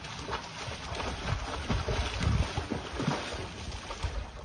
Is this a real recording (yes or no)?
yes